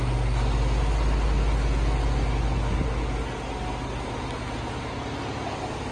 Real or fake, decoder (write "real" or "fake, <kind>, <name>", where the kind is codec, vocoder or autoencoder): real